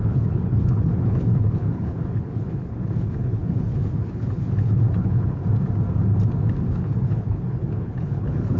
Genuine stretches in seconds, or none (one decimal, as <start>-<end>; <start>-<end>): 5.4-6.7